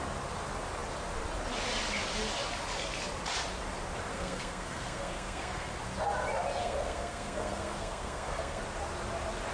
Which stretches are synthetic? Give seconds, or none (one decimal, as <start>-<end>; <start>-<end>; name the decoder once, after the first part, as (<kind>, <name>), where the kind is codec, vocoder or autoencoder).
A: 4.1-5.8 (codec, SNAC); 6.6-8.6